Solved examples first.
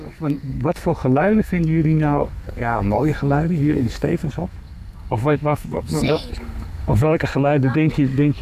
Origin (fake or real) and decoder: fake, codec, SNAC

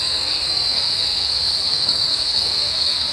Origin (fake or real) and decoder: fake, codec, SNAC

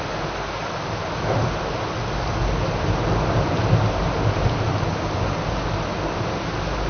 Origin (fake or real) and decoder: real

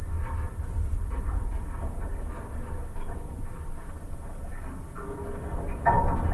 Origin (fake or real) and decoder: real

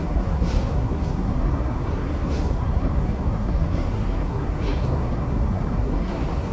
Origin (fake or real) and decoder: fake, codec, SNAC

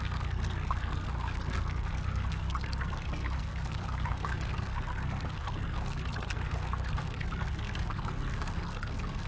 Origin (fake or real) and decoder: fake, codec, SNAC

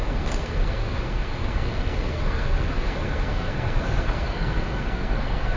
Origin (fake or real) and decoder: fake, codec, SNAC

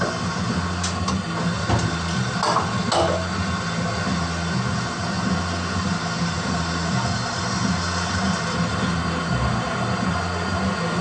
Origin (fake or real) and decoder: real